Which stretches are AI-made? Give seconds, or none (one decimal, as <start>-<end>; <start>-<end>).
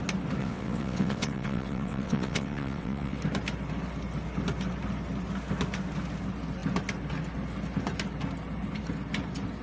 0.4-3.2